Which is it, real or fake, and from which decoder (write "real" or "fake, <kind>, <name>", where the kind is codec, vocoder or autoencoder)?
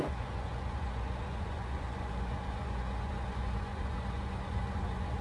fake, vocoder, Vocos